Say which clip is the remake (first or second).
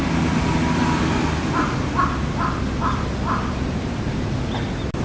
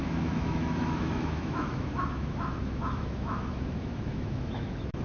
second